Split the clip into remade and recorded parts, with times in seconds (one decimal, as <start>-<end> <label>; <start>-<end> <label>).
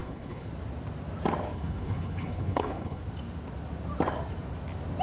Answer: 0.0-0.5 remade; 0.5-1.5 recorded; 1.5-3.0 remade; 3.0-5.0 recorded